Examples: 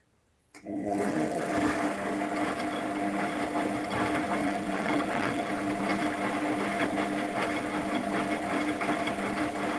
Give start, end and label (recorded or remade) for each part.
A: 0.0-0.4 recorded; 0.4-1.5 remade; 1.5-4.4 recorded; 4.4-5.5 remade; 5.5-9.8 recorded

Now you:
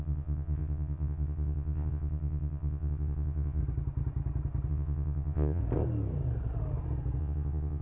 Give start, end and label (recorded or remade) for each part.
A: 0.0-3.6 remade; 3.6-4.7 recorded; 4.7-5.6 remade; 5.6-7.2 recorded; 7.2-7.8 remade